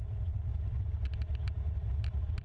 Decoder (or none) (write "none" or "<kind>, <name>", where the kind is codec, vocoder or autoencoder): none